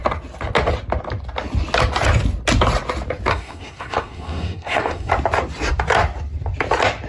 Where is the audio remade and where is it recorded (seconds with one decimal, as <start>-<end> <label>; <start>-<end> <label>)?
0.0-3.3 recorded; 3.3-5.1 remade; 5.1-7.1 recorded